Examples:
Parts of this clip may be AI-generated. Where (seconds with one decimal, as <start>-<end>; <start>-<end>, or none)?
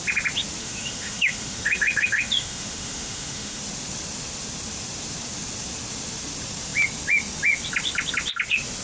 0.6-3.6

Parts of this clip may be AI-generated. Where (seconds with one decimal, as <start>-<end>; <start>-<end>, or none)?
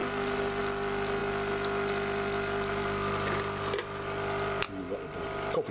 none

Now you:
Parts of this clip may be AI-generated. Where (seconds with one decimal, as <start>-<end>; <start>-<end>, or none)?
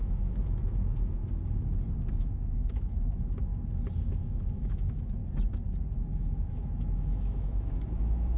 0.0-1.2; 2.1-3.5; 4.1-5.2; 5.9-8.4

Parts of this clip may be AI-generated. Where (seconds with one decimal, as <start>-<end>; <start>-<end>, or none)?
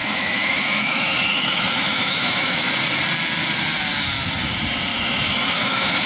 0.0-2.7; 4.9-6.1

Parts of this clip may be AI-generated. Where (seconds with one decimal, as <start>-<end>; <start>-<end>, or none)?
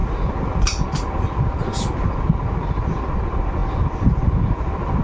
none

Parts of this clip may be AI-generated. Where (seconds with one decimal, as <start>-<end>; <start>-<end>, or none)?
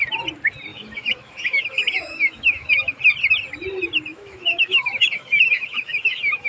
0.7-3.0; 4.1-6.5